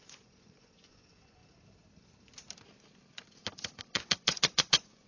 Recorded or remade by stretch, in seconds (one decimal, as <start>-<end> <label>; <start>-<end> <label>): 0.0-1.4 remade; 1.4-3.8 recorded; 3.8-5.1 remade